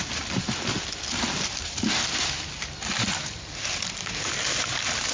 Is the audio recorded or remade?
recorded